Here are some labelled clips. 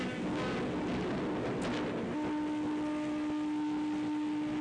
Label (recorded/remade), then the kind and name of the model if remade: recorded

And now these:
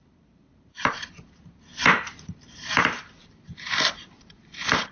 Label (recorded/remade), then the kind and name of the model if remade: remade, vocoder, BigVGAN v2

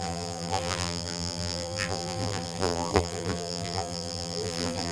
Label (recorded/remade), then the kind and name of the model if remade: remade, vocoder, BigVGAN v2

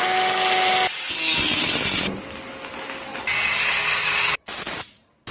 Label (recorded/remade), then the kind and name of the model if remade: recorded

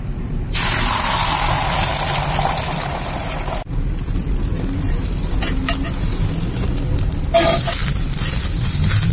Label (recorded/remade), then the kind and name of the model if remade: recorded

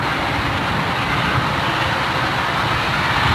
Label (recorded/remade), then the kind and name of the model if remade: recorded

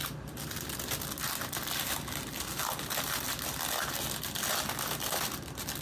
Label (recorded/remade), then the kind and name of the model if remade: recorded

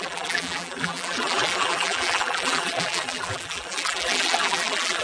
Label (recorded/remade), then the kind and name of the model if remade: remade, vocoder, BigVGAN v2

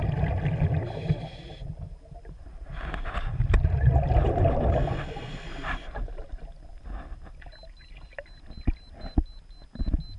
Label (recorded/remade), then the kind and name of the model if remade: recorded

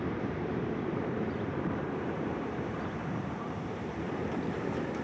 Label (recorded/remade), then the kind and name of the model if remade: remade, vocoder, BigVGAN v2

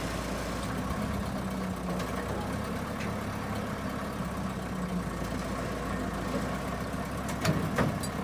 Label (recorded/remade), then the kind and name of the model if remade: recorded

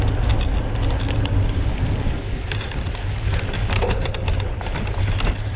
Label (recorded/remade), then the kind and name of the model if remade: recorded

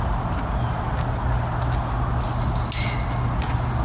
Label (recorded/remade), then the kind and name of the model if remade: recorded